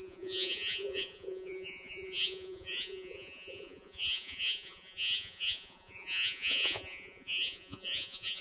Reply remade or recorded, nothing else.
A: remade